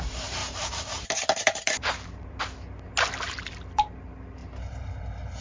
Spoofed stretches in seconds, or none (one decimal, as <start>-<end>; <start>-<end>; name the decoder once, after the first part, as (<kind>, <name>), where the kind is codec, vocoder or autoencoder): 0.4-2.4 (vocoder, BigVGAN v2); 4.4-5.0